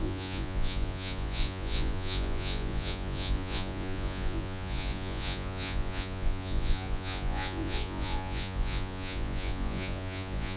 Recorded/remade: remade